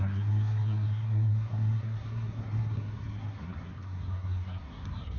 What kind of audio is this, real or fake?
fake